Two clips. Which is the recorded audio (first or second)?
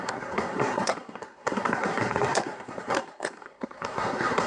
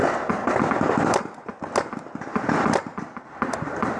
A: second